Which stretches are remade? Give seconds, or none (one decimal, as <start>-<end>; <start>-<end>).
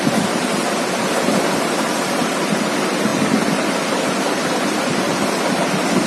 0.0-0.5; 1.5-6.1